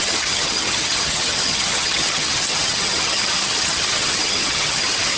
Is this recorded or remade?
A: remade